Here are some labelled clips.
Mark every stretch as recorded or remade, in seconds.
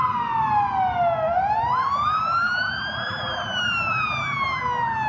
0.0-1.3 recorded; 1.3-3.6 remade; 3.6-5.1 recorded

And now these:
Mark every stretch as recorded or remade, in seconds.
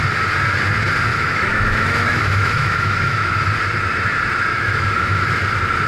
0.0-1.1 recorded; 1.1-3.4 remade; 3.4-4.5 recorded; 4.5-5.4 remade; 5.4-5.9 recorded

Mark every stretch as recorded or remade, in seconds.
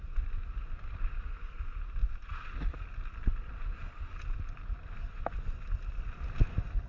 0.0-6.9 recorded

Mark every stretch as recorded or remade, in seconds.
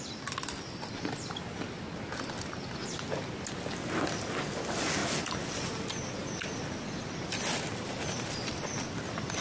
0.0-9.4 recorded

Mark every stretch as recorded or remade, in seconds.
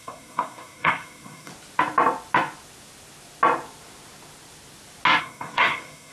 0.0-1.5 remade; 1.5-5.2 recorded; 5.2-6.1 remade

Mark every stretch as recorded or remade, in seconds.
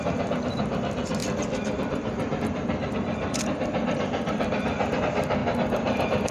0.0-1.2 recorded; 1.2-5.0 remade; 5.0-5.4 recorded; 5.4-6.3 remade